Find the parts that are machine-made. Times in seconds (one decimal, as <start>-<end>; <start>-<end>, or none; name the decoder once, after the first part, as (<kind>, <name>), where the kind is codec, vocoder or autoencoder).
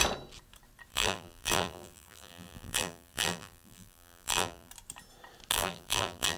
0.9-4.7 (vocoder, BigVGAN v2); 5.5-6.4